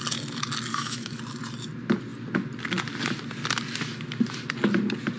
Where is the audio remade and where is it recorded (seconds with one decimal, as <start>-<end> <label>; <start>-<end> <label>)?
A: 0.0-0.7 recorded; 0.7-1.2 remade; 1.2-5.2 recorded